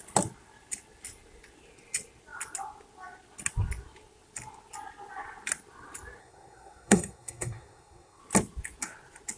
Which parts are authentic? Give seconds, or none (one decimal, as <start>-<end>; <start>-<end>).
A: 0.0-6.2; 8.2-9.4